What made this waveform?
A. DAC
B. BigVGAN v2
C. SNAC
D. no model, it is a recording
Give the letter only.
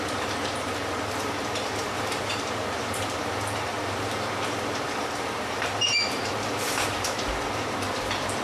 B